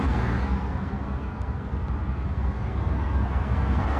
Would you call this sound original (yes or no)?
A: no